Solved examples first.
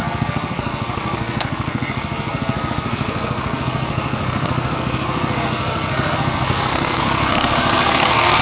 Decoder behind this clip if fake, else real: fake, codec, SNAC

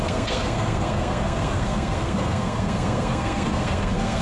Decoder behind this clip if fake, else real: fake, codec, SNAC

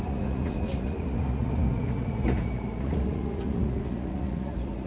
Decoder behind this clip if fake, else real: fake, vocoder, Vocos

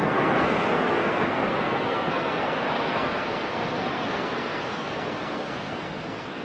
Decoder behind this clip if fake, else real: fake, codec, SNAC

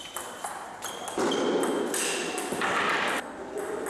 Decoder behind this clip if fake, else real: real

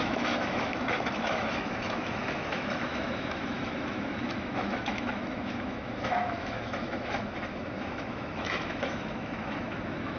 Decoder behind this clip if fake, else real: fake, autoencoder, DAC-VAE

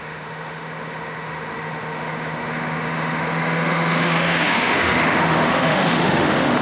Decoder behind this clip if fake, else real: fake, autoencoder, DAC-VAE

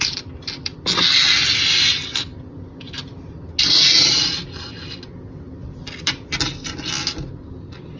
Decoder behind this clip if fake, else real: real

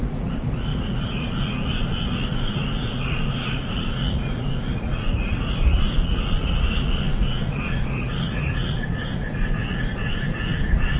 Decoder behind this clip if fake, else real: fake, vocoder, Vocos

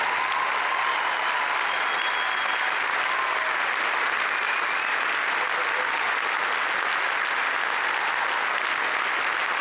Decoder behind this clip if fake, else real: real